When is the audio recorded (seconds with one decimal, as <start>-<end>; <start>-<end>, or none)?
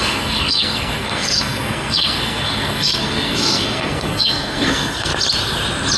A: 5.1-6.0